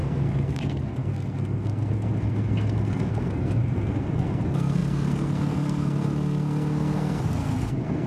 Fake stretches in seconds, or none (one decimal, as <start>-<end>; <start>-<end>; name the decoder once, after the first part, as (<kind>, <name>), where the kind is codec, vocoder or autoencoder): 0.0-8.1 (codec, SNAC)